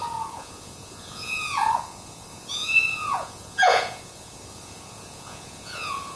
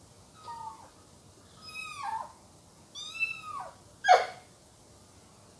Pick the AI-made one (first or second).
first